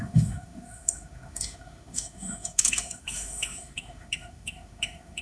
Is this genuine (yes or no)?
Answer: no